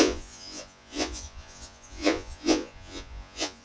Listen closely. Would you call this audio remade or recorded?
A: remade